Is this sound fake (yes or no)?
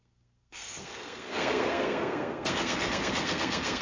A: yes